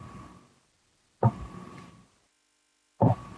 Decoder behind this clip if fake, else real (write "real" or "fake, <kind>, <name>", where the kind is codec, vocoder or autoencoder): real